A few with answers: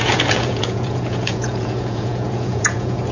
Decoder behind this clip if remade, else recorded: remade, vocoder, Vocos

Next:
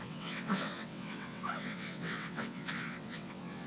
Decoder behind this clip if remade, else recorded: remade, vocoder, WaveNeXt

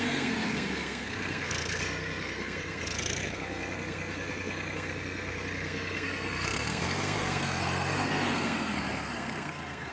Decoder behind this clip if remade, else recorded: remade, codec, SNAC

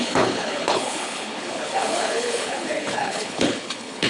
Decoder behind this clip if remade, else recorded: remade, codec, HILCodec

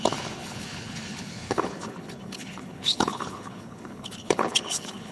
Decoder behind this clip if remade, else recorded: remade, codec, HILCodec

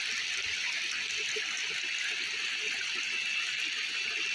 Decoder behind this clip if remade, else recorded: recorded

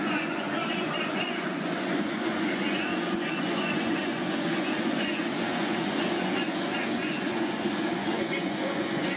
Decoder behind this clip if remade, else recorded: remade, vocoder, Vocos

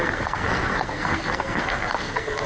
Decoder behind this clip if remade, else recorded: remade, codec, SNAC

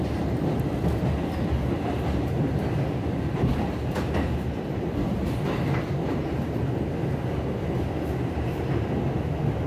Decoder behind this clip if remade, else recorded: recorded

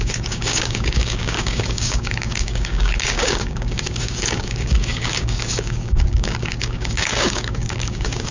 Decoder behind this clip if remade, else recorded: remade, codec, DAC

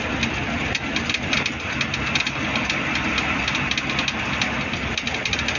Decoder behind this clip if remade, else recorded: recorded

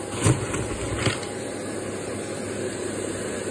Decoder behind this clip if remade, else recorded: recorded